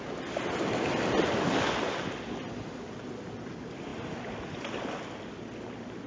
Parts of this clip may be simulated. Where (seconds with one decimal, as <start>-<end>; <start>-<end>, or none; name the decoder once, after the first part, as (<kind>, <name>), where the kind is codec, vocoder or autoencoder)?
none